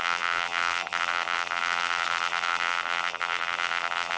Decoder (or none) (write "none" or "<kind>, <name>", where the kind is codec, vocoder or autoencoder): vocoder, BigVGAN v2